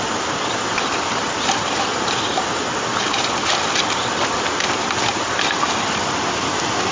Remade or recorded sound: recorded